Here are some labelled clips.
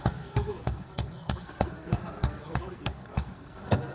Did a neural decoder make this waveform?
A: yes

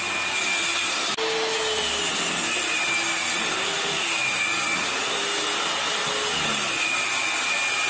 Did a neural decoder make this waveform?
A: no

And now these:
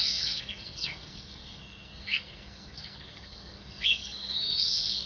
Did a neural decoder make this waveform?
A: yes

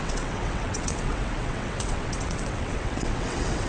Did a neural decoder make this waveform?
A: yes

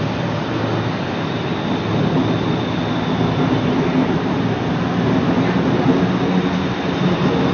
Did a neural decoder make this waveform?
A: no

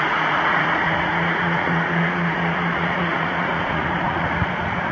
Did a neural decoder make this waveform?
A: yes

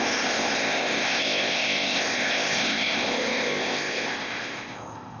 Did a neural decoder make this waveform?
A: yes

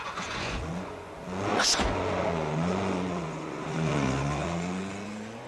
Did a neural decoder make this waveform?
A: yes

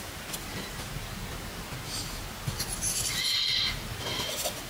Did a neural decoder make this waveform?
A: no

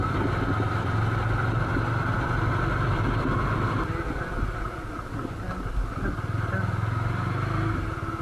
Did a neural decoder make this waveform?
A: no